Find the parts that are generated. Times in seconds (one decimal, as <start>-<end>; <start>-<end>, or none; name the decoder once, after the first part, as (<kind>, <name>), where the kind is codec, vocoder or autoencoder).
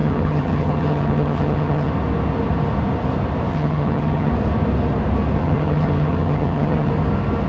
0.0-1.9 (vocoder, HiFi-GAN); 3.5-4.3; 5.4-6.9